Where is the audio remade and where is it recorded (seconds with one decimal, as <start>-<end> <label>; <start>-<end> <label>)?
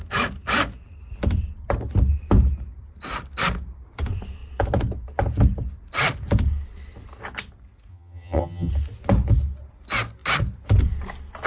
0.0-7.9 recorded; 7.9-8.7 remade; 8.7-11.5 recorded